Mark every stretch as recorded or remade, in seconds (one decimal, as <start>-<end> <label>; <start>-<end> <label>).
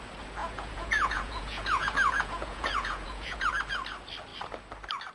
0.0-0.4 recorded; 0.4-3.5 remade; 3.5-5.1 recorded